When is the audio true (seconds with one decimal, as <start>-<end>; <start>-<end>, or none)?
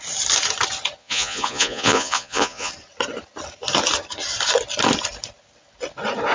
0.0-1.0; 2.7-6.3